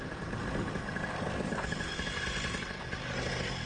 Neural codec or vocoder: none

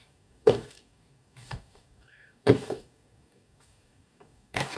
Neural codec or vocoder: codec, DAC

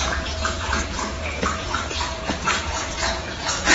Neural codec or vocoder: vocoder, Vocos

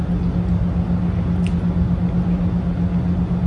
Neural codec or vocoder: none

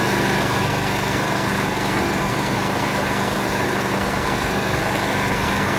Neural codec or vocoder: codec, SNAC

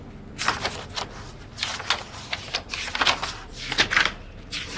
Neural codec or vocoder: none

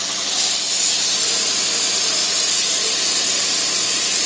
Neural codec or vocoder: none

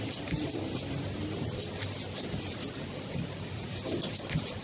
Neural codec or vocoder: vocoder, BigVGAN v2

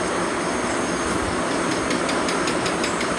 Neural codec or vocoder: none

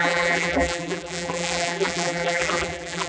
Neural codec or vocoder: vocoder, BigVGAN v2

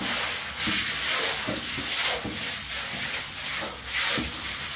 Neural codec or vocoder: none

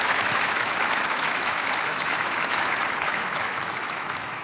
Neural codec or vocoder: autoencoder, DAC-VAE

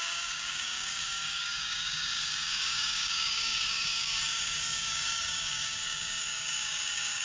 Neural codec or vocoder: codec, DAC